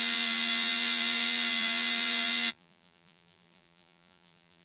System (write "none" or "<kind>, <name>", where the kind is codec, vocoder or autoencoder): vocoder, BigVGAN v2